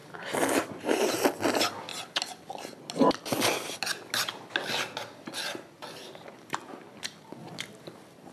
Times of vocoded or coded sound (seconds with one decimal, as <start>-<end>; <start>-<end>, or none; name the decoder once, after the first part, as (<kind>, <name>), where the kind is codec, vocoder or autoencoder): none